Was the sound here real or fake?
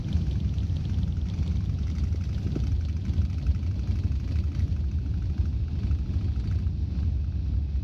real